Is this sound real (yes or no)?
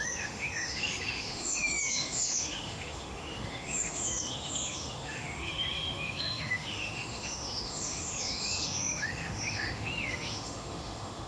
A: no